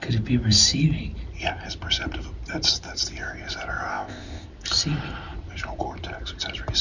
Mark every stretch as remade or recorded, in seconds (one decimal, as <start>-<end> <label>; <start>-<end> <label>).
0.0-3.9 recorded; 3.9-4.5 remade; 4.5-6.8 recorded